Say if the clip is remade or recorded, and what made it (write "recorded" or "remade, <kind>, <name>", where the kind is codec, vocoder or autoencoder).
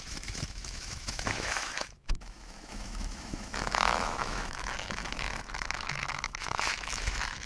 remade, autoencoder, DAC-VAE